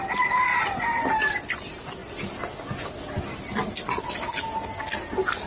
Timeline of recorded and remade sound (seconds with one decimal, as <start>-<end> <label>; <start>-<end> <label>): 0.0-5.5 recorded

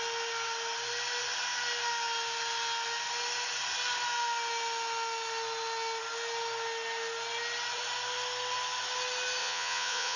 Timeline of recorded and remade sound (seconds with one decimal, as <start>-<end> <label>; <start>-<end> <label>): 0.0-9.4 recorded; 9.4-10.2 remade

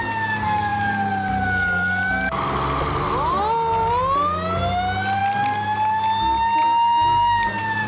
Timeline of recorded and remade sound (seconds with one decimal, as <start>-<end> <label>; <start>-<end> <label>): 0.0-7.9 recorded

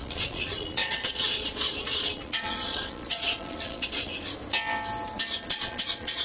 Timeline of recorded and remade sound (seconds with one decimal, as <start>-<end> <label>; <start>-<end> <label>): 0.0-4.1 remade; 4.1-5.4 recorded; 5.4-6.2 remade

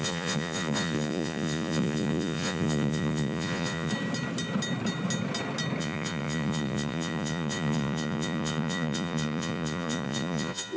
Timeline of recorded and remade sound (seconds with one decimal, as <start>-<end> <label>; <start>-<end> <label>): 0.0-3.9 remade; 3.9-5.8 recorded; 5.8-10.8 remade

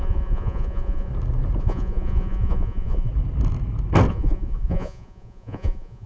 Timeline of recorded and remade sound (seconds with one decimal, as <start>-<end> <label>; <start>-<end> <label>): 0.0-1.1 remade; 1.1-1.6 recorded; 1.6-3.1 remade; 3.1-4.1 recorded; 4.1-6.1 remade

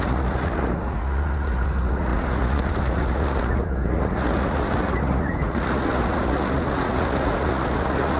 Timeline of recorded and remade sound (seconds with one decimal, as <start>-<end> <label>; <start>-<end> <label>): 0.0-8.2 remade

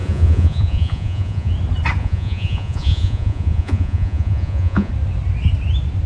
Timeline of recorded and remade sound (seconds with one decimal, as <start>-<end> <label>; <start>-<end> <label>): 0.0-1.5 remade; 1.5-2.0 recorded; 2.0-4.9 remade; 4.9-6.1 recorded